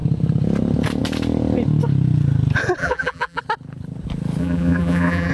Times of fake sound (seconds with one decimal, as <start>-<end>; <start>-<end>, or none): 2.8-3.4; 4.4-5.3